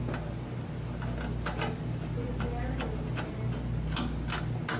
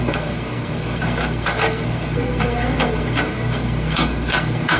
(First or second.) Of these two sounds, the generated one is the second